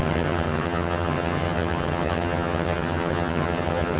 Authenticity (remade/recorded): remade